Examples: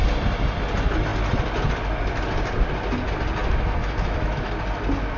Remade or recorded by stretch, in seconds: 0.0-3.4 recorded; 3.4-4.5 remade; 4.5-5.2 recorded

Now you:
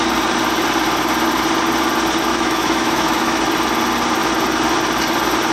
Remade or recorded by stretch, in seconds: 0.0-2.3 recorded; 2.3-3.4 remade; 3.4-5.5 recorded

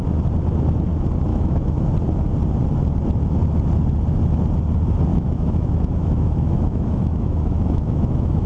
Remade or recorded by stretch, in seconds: 0.0-1.3 recorded; 1.3-1.9 remade; 1.9-5.1 recorded; 5.1-8.5 remade

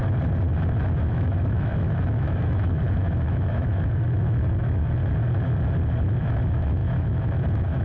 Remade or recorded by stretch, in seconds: 0.0-1.1 recorded; 1.1-5.0 remade; 5.0-6.2 recorded; 6.2-7.8 remade

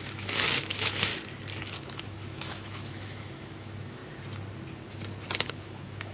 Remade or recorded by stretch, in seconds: 0.0-1.1 remade; 1.1-1.8 recorded; 1.8-4.0 remade; 4.0-5.5 recorded; 5.5-6.1 remade

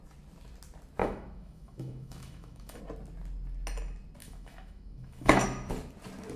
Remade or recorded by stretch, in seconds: 0.0-1.0 recorded; 1.0-2.8 remade; 2.8-4.2 recorded; 4.2-5.7 remade; 5.7-6.4 recorded

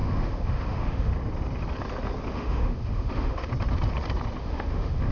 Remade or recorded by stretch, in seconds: 0.0-1.1 remade; 1.1-2.3 recorded; 2.3-3.5 remade; 3.5-4.4 recorded; 4.4-5.1 remade

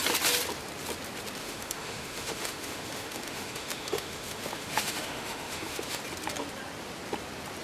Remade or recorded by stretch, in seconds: 0.0-1.4 recorded; 1.4-6.0 remade; 6.0-7.6 recorded